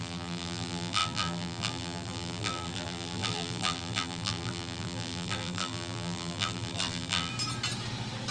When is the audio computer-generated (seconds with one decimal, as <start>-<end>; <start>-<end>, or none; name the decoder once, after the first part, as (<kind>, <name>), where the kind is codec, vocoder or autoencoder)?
0.0-7.3 (vocoder, BigVGAN v2)